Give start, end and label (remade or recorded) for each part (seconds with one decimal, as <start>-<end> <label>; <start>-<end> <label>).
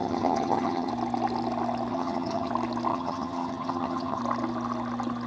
0.0-0.9 remade; 0.9-1.9 recorded; 1.9-2.5 remade; 2.5-2.9 recorded; 2.9-4.2 remade; 4.2-5.3 recorded